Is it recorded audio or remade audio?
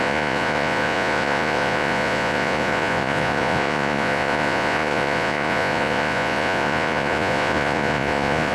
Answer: remade